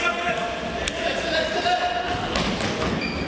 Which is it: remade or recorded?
recorded